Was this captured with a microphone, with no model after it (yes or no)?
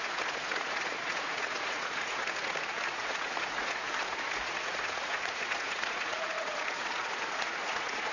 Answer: no